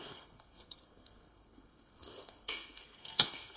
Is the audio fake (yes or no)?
yes